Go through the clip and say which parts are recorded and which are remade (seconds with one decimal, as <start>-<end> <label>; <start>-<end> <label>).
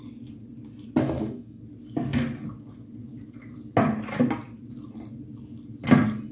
0.0-1.0 recorded; 1.0-1.6 remade; 1.6-6.3 recorded